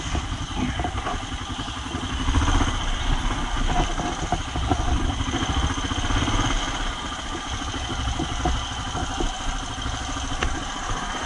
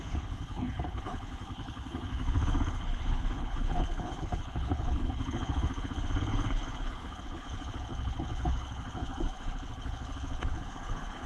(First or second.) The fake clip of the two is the second